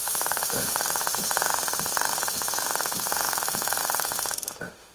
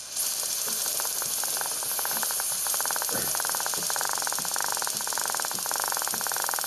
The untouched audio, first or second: second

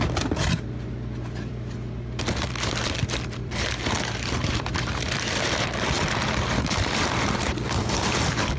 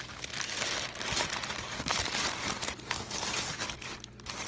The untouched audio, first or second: second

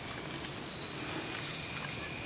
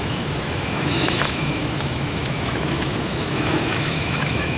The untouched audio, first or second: first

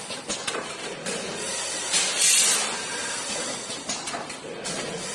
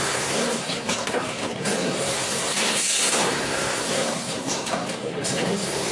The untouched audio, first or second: first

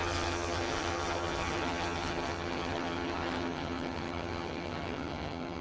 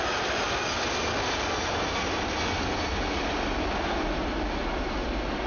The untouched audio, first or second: second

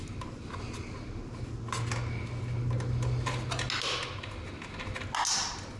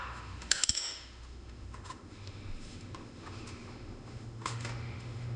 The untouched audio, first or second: first